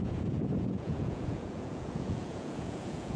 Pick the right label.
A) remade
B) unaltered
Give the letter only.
A